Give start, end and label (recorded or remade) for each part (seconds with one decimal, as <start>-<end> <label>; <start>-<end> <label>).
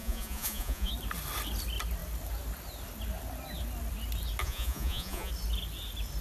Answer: 0.0-0.9 remade; 0.9-4.4 recorded; 4.4-5.3 remade; 5.3-6.2 recorded